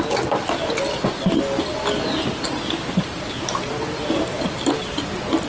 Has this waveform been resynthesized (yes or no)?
no